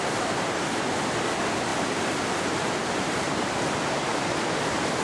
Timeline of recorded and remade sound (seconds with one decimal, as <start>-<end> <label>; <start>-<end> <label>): 0.0-5.0 recorded